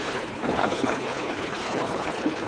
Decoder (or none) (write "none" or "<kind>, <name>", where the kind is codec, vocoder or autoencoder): codec, HILCodec